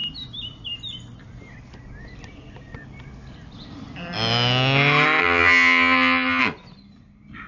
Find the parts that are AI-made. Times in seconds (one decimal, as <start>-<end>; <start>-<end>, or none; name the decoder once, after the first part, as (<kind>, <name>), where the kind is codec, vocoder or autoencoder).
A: 5.2-6.4 (vocoder, HiFi-GAN)